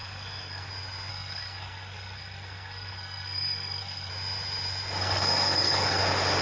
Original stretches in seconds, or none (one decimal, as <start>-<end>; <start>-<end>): 0.7-1.1; 4.1-5.0; 6.0-6.4